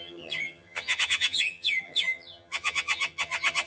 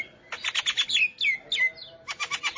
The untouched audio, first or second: second